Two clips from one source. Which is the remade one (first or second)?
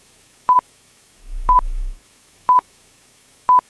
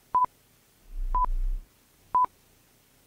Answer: first